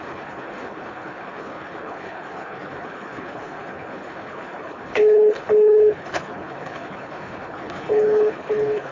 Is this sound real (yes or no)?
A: no